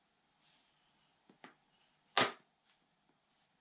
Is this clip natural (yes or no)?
yes